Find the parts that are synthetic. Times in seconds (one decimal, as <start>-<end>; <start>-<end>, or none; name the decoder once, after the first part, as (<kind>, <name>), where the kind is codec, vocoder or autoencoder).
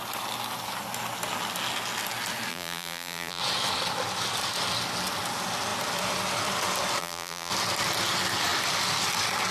2.5-3.4 (vocoder, BigVGAN v2); 7.0-7.5